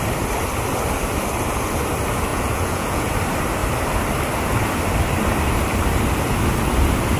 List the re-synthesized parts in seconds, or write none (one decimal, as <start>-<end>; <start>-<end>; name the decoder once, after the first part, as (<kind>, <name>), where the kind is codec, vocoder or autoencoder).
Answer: 2.3-3.1 (vocoder, Vocos)